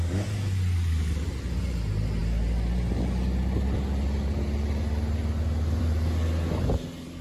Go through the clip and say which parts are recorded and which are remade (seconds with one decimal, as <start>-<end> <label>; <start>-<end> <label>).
0.0-7.2 recorded